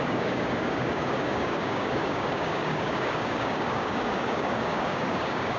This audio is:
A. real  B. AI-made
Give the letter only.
B